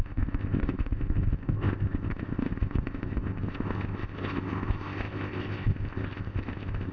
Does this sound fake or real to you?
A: fake